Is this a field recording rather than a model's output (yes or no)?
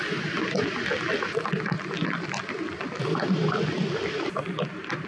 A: yes